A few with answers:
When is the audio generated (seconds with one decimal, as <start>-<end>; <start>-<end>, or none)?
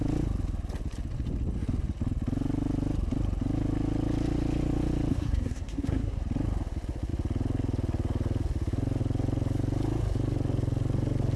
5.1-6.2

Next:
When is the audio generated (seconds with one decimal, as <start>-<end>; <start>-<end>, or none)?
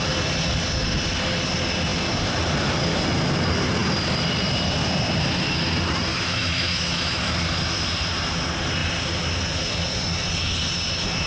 6.1-7.2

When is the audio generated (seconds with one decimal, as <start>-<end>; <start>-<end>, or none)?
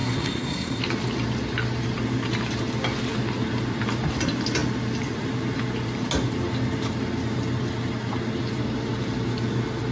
0.0-0.8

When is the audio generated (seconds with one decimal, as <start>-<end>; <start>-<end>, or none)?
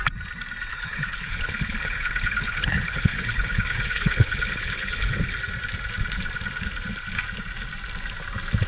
0.7-5.4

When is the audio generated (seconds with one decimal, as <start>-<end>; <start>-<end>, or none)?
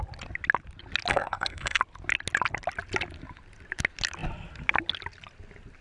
1.1-1.8